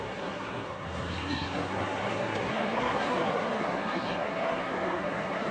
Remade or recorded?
remade